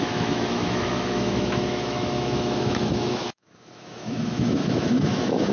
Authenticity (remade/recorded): remade